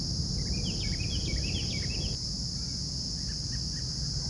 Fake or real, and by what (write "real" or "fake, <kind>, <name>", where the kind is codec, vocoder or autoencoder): real